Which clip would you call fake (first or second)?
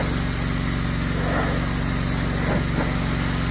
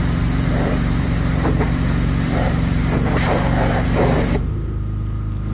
second